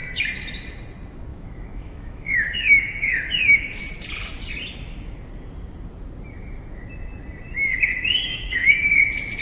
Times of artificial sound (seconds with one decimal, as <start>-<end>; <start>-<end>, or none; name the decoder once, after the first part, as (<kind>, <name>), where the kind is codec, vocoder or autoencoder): 1.3-3.8 (autoencoder, DAC-VAE); 8.2-9.0